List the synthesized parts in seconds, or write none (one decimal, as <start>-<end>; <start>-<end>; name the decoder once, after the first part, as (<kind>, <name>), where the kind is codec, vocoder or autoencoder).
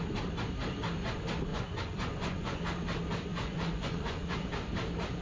1.5-2.6 (vocoder, Vocos); 3.3-4.5